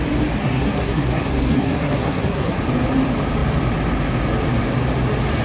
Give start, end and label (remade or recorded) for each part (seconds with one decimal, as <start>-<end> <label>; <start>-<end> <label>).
0.0-0.4 recorded; 0.4-2.6 remade; 2.6-5.4 recorded